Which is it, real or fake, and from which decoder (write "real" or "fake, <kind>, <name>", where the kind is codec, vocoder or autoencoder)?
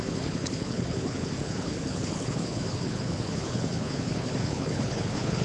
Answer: fake, codec, HILCodec